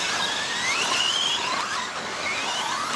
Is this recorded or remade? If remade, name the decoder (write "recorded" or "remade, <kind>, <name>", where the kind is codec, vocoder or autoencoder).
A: recorded